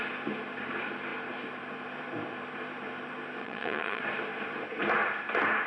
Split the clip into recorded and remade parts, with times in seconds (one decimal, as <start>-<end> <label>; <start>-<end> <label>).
0.0-3.4 recorded; 3.4-4.0 remade; 4.0-5.7 recorded